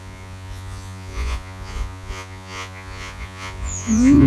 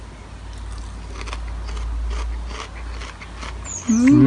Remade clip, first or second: first